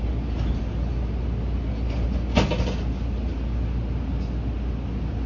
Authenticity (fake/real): real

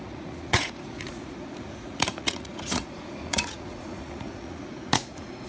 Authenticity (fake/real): fake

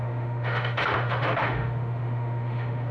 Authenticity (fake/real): fake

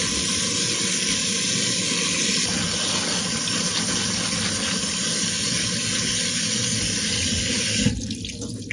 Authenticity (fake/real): real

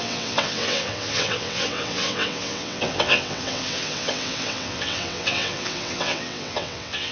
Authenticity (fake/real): fake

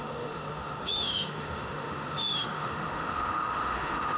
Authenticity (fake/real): fake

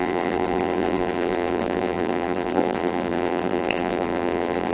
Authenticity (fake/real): fake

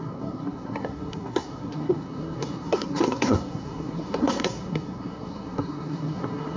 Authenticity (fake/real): fake